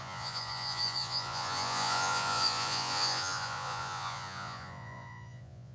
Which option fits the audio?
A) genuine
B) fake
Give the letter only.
B